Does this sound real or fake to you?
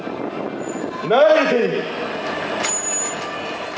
real